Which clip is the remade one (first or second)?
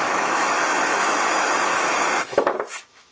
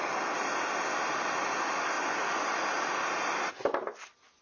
first